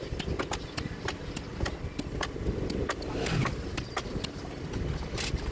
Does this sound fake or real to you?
real